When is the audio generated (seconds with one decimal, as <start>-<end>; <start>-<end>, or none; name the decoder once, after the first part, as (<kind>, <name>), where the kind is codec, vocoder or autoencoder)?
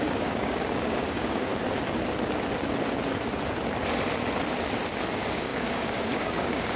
0.0-1.5 (codec, DAC); 5.1-6.8